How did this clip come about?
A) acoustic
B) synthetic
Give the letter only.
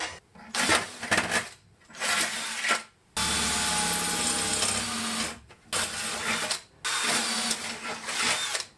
A